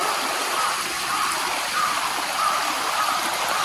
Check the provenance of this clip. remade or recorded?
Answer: recorded